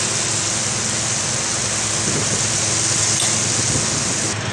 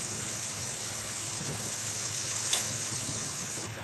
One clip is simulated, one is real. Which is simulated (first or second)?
second